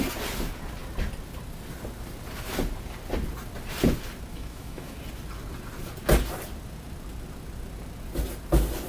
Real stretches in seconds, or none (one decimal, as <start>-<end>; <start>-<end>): 0.0-4.3; 5.0-8.9